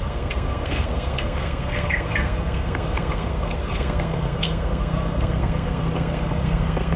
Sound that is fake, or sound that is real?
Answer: fake